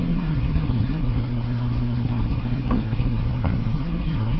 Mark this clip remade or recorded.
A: remade